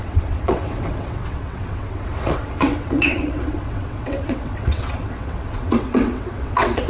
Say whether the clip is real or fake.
fake